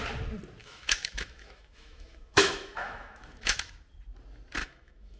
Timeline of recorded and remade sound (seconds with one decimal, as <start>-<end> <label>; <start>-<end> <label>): 0.0-0.6 recorded; 0.6-3.7 remade; 3.7-4.6 recorded; 4.6-5.2 remade